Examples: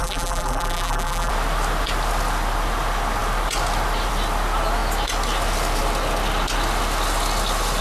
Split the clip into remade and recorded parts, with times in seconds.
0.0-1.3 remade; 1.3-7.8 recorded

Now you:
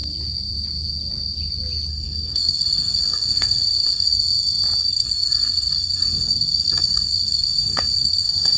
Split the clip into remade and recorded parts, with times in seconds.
0.0-1.9 recorded; 1.9-4.2 remade; 4.2-4.8 recorded; 4.8-8.6 remade

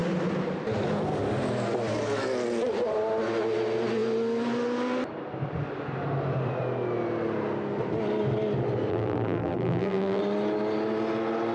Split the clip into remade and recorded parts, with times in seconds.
0.0-8.9 recorded; 8.9-10.2 remade; 10.2-11.5 recorded

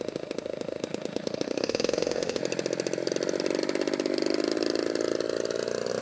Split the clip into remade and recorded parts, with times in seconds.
0.0-2.4 remade; 2.4-6.0 recorded